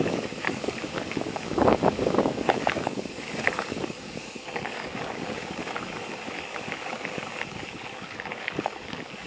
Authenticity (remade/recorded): remade